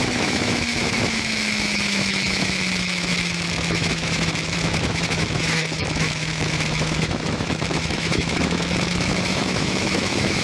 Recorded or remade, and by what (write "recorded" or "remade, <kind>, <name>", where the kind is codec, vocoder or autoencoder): remade, autoencoder, DAC-VAE